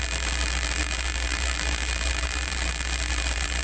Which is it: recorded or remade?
remade